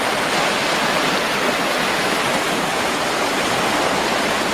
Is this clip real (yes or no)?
yes